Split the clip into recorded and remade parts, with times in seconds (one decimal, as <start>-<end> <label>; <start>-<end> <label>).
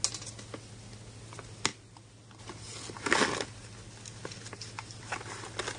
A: 0.0-5.8 recorded